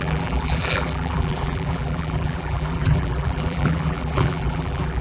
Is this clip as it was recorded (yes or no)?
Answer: no